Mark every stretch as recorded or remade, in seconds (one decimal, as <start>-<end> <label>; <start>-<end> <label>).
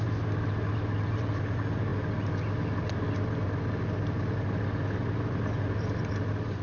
0.0-6.6 recorded